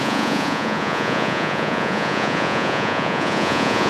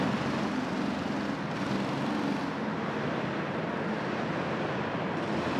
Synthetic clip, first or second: first